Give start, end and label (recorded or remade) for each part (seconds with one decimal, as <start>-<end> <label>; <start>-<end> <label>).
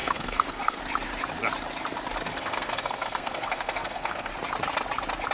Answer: 0.0-0.8 remade; 0.8-2.3 recorded; 2.3-4.3 remade; 4.3-5.3 recorded